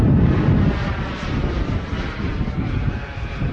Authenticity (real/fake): real